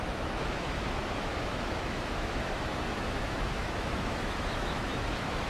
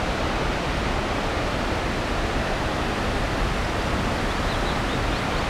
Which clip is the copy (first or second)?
first